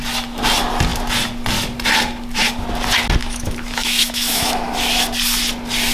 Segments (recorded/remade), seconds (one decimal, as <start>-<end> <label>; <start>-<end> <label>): 0.0-3.2 recorded; 3.2-4.7 remade; 4.7-5.9 recorded